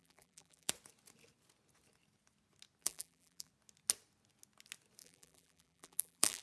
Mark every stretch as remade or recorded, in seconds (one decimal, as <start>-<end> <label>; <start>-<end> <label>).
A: 0.0-0.7 remade; 0.7-2.8 recorded; 2.8-3.5 remade; 3.5-5.0 recorded; 5.0-6.4 remade